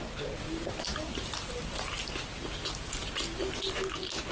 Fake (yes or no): no